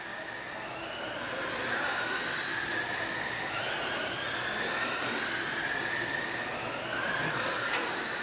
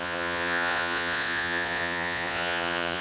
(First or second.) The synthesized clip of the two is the second